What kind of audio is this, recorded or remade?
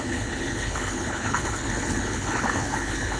remade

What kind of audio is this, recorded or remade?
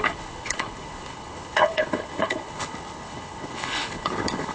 remade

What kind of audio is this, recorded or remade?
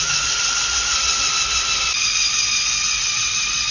recorded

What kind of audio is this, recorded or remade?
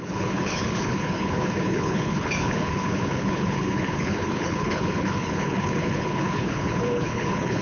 remade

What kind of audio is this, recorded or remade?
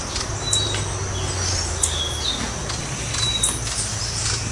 recorded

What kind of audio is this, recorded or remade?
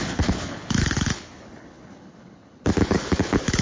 remade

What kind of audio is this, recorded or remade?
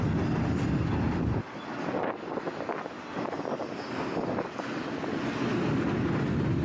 recorded